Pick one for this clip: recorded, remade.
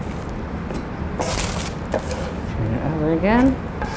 recorded